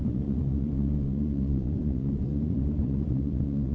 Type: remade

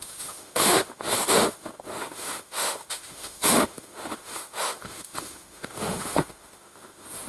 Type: remade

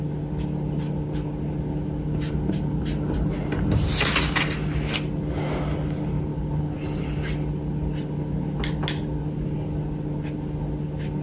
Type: recorded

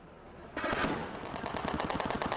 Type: recorded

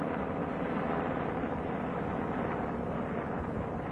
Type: recorded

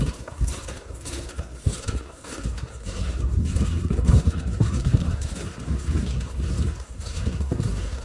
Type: remade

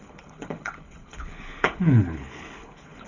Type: remade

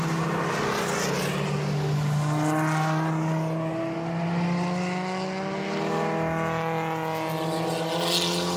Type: recorded